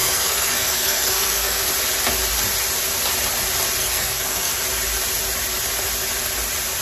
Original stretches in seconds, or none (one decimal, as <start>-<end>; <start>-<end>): 1.7-3.8; 4.5-6.8